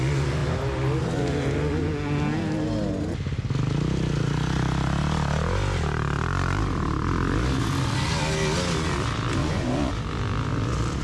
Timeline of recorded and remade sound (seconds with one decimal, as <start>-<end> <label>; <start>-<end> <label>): 0.0-9.4 recorded; 9.4-9.9 remade; 9.9-11.0 recorded